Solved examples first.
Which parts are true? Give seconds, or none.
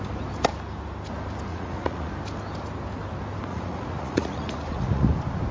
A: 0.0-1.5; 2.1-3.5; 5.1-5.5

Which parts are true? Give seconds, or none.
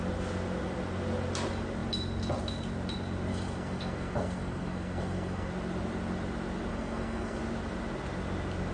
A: 0.0-3.3; 5.5-6.7; 7.4-8.7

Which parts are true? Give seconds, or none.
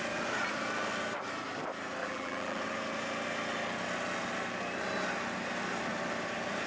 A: 0.0-2.0; 2.6-6.7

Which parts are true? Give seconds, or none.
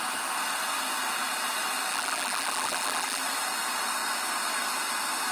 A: 0.0-1.9; 3.2-5.3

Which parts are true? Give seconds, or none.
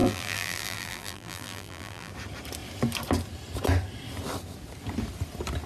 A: 2.1-5.7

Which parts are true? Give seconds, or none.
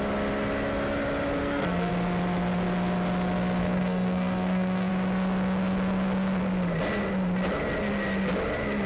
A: 0.0-1.4; 1.9-3.6; 4.9-8.9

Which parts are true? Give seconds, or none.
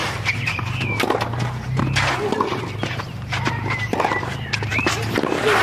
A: 0.0-3.4; 4.7-5.6